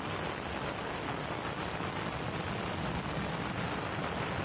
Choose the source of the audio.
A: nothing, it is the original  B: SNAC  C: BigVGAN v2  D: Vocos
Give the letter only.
A